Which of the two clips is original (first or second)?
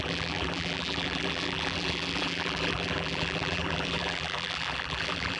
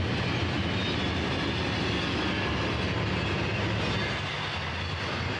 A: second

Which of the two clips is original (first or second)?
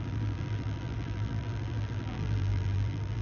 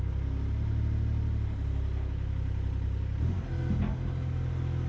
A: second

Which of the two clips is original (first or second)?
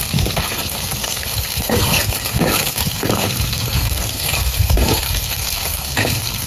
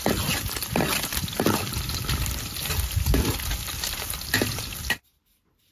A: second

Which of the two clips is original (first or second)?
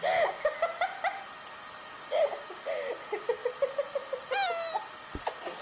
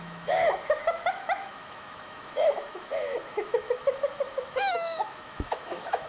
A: first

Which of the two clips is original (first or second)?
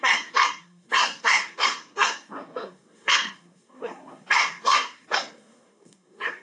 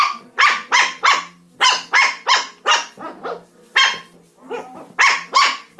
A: second